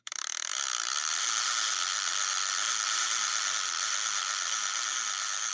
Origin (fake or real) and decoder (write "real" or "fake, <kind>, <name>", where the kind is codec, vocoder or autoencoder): fake, vocoder, BigVGAN v2